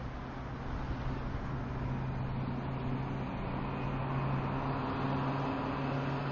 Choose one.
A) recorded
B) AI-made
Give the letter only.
A